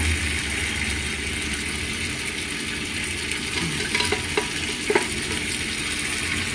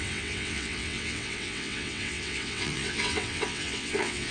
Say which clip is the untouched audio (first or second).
first